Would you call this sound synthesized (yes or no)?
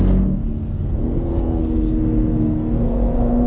yes